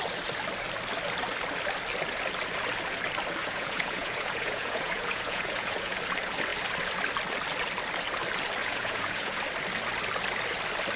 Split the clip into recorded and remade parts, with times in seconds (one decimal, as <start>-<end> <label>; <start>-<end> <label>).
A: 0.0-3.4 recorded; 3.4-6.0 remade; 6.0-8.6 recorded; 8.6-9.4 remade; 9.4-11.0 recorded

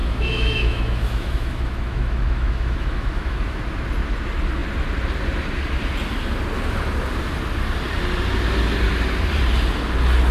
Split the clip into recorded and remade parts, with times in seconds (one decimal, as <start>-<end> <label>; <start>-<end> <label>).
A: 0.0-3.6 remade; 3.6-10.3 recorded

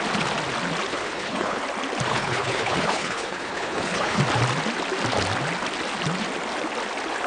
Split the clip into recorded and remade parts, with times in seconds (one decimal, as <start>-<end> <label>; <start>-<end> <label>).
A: 0.0-0.9 recorded; 0.9-1.6 remade; 1.6-2.1 recorded; 2.1-4.2 remade; 4.2-7.3 recorded